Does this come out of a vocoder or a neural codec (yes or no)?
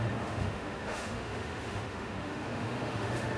yes